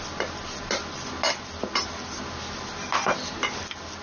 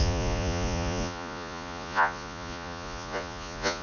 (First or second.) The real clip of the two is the first